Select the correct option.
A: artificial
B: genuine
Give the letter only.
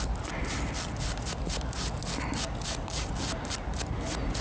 B